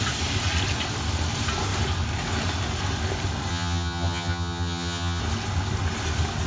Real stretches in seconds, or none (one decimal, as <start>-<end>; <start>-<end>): 0.0-3.5; 5.2-6.5